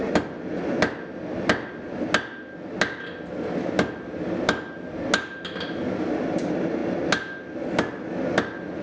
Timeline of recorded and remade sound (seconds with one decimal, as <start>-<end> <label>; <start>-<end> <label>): 0.0-8.8 recorded